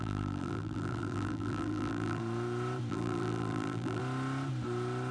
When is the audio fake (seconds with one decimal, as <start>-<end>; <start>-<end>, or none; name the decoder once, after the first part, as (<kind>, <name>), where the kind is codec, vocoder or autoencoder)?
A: 0.0-2.2 (vocoder, BigVGAN v2); 2.9-4.0